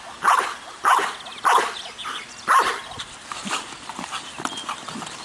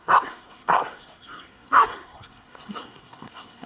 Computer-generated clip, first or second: second